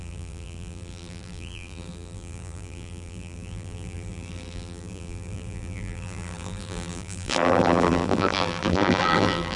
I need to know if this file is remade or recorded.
remade